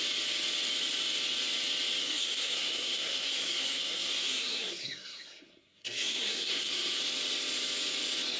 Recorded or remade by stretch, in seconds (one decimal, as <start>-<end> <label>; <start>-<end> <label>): 0.0-2.0 recorded; 2.0-7.0 remade; 7.0-8.4 recorded